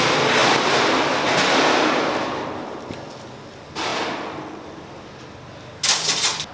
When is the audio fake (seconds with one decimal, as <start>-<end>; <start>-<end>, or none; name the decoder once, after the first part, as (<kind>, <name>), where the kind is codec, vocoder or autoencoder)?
3.9-4.9 (vocoder, BigVGAN v2)